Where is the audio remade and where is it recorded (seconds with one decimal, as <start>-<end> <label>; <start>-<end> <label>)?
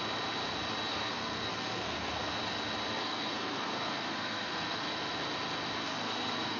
0.0-0.9 recorded; 0.9-2.3 remade; 2.3-3.0 recorded; 3.0-4.9 remade; 4.9-5.8 recorded; 5.8-6.6 remade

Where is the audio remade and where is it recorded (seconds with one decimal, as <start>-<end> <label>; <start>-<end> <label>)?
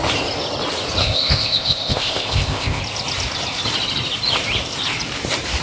0.0-1.0 recorded; 1.0-2.8 remade; 2.8-5.6 recorded